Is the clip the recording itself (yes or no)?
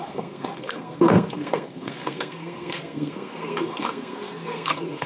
no